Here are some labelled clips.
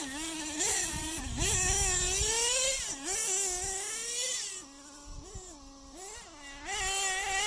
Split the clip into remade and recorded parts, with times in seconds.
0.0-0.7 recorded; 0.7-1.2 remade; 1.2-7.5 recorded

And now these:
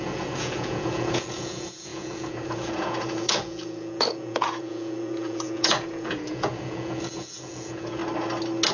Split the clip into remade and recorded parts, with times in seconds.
0.0-8.0 remade; 8.0-8.7 recorded

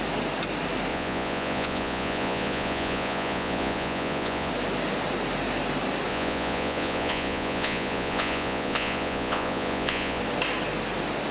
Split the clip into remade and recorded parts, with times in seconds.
0.0-0.9 recorded; 0.9-4.5 remade; 4.5-6.1 recorded; 6.1-10.2 remade; 10.2-11.3 recorded